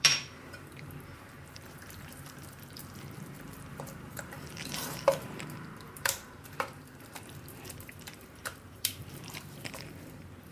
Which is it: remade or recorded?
remade